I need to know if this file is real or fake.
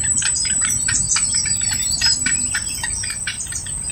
real